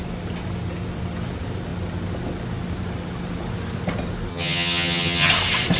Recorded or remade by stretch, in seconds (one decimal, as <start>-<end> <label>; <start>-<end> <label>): 0.0-4.3 recorded; 4.3-5.3 remade; 5.3-5.8 recorded